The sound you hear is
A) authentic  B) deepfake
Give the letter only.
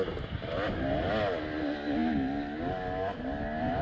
A